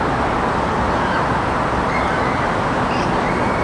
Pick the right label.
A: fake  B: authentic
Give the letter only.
B